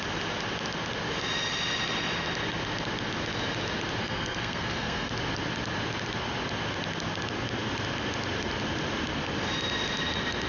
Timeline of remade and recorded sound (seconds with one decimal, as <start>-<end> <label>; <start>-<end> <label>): 0.0-4.0 recorded; 4.0-5.1 remade; 5.1-10.5 recorded